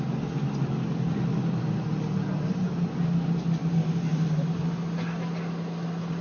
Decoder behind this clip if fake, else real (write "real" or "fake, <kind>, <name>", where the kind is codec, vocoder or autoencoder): real